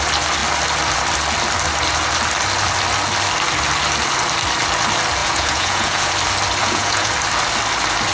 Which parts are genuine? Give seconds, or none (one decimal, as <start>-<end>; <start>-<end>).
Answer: 0.0-5.2; 6.1-6.6; 7.1-8.1